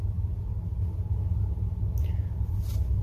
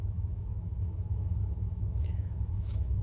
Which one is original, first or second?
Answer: first